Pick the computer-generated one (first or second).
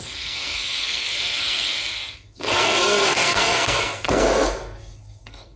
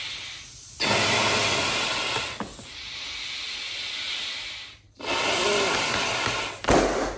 first